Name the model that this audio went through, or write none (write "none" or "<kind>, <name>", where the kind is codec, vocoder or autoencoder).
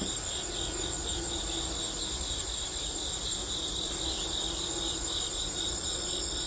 none